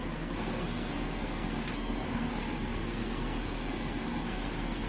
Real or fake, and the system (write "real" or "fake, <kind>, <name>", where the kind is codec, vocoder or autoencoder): fake, codec, SNAC